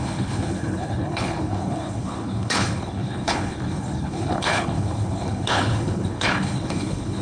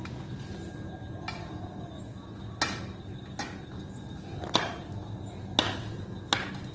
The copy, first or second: first